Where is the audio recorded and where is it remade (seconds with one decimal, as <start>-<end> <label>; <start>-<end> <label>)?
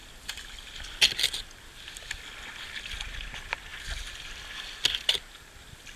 0.0-6.0 recorded